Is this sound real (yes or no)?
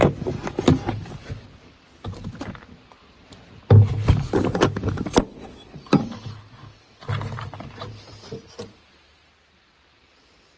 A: yes